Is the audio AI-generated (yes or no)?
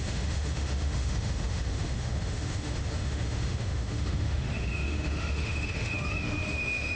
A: yes